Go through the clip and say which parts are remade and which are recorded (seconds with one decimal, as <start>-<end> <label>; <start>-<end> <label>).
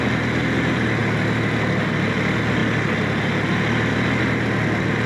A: 0.0-5.1 recorded